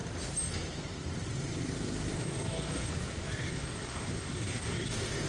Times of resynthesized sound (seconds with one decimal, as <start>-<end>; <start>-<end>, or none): 2.2-2.9; 3.5-5.3